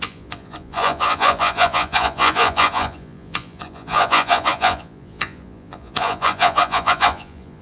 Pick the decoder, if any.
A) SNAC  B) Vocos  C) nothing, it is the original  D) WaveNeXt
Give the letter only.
B